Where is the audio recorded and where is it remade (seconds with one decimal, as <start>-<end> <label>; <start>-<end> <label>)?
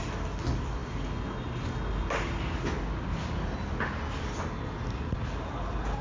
0.0-6.0 recorded